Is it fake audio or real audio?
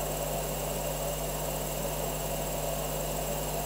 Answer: real